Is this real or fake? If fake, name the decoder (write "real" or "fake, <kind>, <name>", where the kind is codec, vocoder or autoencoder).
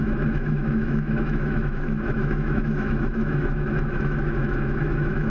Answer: fake, autoencoder, DAC-VAE